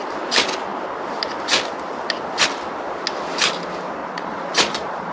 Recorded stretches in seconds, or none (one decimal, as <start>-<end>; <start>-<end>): 0.0-4.0